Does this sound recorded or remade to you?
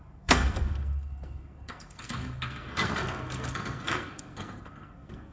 remade